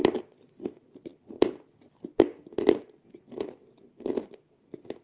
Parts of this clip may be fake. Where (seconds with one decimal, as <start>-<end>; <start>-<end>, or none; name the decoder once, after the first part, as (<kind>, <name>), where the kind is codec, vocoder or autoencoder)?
none